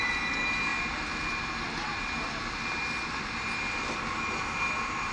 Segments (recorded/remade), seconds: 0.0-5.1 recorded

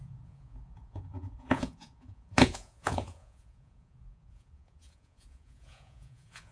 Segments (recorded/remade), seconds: 0.0-6.5 remade

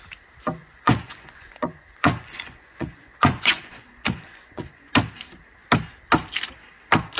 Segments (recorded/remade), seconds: 0.0-0.6 recorded; 0.6-4.9 remade; 4.9-7.2 recorded

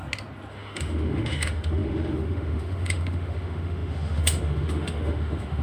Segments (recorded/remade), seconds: 0.0-0.5 recorded; 0.5-5.6 remade

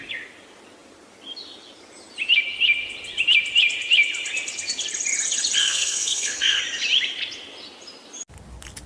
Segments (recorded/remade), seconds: 0.0-5.6 recorded; 5.6-6.6 remade; 6.6-8.9 recorded

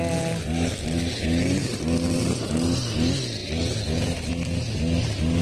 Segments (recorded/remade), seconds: 0.0-5.4 recorded

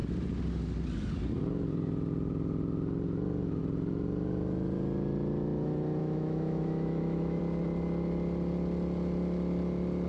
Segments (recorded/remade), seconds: 0.0-6.0 recorded; 6.0-7.4 remade; 7.4-10.1 recorded

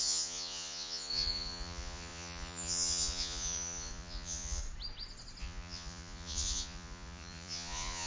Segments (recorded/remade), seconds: 0.0-4.6 remade; 4.6-5.4 recorded; 5.4-8.1 remade